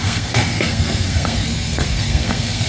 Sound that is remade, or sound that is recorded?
remade